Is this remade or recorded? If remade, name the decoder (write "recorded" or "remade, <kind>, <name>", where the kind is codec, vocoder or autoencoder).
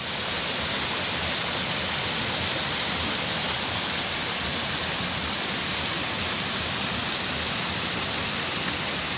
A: recorded